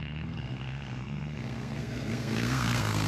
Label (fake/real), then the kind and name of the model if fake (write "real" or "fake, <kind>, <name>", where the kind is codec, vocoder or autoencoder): fake, codec, SNAC